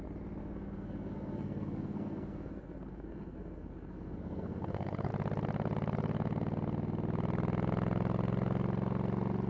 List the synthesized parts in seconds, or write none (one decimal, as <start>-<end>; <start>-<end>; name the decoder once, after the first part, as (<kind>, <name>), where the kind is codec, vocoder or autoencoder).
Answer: 0.4-5.1 (codec, SNAC)

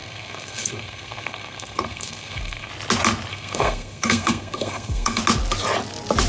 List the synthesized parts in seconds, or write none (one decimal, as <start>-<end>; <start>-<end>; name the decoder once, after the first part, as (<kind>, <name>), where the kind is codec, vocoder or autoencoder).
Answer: 0.0-2.7 (codec, SNAC); 3.3-5.2

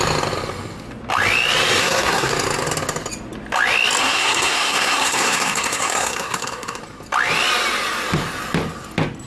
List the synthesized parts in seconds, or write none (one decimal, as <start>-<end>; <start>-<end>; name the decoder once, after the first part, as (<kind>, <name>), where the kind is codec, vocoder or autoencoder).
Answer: 1.8-2.3 (codec, SNAC); 4.0-6.8

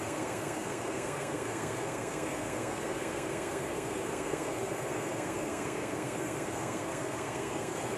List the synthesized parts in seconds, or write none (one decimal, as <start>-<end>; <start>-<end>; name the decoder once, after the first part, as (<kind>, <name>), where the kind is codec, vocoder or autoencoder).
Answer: 0.0-8.0 (codec, SNAC)

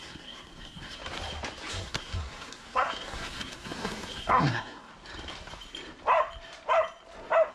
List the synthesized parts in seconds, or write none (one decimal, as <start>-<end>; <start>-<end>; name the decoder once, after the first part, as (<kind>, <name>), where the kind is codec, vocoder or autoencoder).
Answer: 0.0-1.0 (codec, SNAC); 1.7-4.9

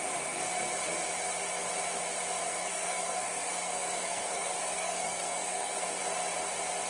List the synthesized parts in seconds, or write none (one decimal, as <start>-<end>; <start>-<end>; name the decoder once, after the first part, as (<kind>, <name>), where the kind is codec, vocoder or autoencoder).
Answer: 2.4-6.0 (codec, SNAC)

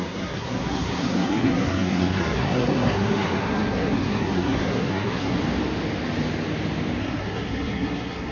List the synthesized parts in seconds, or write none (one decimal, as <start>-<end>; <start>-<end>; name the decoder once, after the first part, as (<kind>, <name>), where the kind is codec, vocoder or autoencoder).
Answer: 0.0-5.4 (codec, SNAC); 7.0-8.3